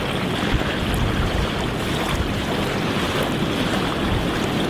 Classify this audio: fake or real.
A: real